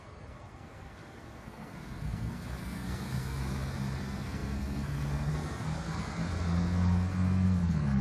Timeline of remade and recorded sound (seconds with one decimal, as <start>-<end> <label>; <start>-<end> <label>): 0.0-8.0 remade